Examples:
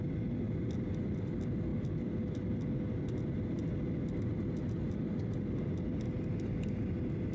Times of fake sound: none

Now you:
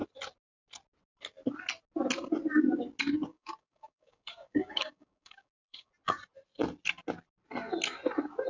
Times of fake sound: 3.3-5.9 (codec, DAC)

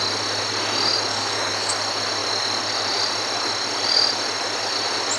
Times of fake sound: 1.1-1.7 (codec, DAC)

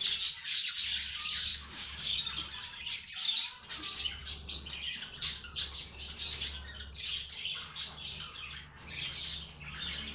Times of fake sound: 1.5-2.2 (codec, DAC)

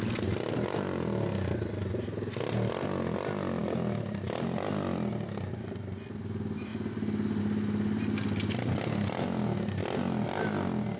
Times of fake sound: none

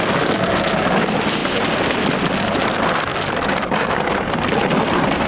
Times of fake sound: none

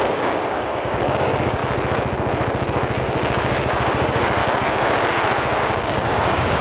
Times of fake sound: 0.0-1.6 (codec, DAC); 3.0-4.4; 5.6-6.6